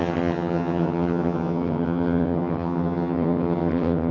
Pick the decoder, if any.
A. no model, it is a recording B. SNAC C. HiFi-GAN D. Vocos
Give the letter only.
C